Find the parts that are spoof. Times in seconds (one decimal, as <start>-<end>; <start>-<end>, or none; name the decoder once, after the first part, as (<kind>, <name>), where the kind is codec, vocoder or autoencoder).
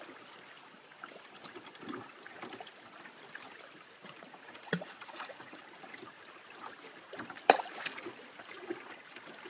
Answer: 4.0-5.6 (vocoder, Vocos)